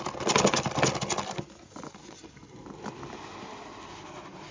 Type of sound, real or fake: real